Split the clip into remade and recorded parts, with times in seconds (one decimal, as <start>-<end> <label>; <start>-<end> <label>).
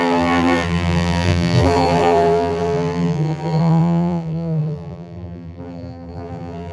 0.0-6.7 remade